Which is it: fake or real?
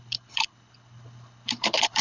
fake